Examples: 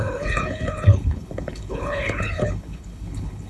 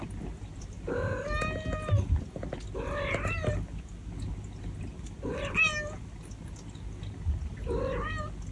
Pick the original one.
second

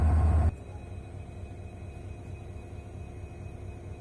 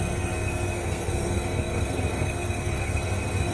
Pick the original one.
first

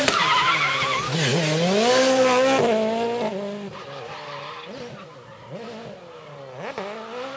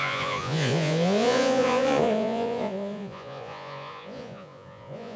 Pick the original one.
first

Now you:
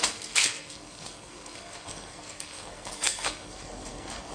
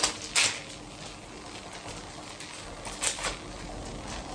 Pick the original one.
second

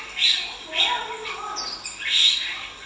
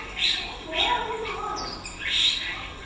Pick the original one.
first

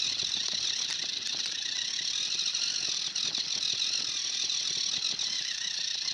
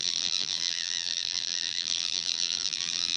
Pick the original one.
first